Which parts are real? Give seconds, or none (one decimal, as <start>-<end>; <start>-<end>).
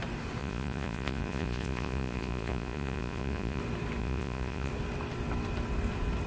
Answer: 0.0-0.4; 3.6-4.0; 4.7-6.3